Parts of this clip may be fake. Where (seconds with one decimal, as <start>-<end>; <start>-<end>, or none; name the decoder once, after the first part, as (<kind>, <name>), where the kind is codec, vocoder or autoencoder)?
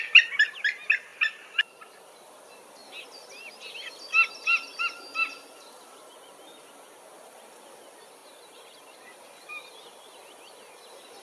8.2-9.7 (vocoder, BigVGAN v2)